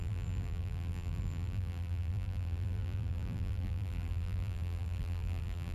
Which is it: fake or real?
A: fake